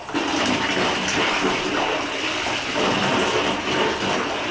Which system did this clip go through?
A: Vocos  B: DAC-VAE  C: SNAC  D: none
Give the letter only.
D